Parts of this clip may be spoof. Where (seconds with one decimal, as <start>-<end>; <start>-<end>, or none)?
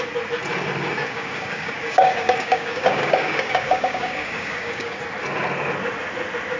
1.0-5.0